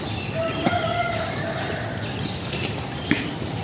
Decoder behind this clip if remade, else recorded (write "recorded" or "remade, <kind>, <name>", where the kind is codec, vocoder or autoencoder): recorded